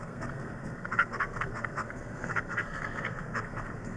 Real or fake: fake